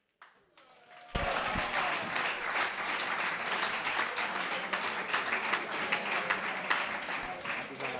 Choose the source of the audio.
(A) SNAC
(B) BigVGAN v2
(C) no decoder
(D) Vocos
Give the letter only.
C